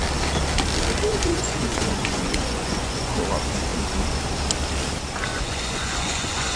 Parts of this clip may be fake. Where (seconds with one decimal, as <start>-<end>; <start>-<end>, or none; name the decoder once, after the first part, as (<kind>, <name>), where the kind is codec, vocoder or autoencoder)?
1.1-3.2 (vocoder, Vocos); 5.3-6.6